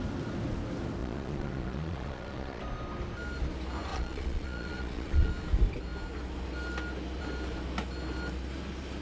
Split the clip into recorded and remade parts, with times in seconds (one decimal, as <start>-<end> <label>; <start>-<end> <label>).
0.0-1.0 recorded; 1.0-2.6 remade; 2.6-3.9 recorded; 3.9-5.3 remade; 5.3-9.0 recorded